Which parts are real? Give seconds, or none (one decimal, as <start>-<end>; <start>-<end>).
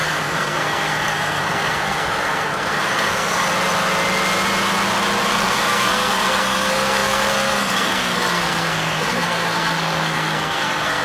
3.4-5.3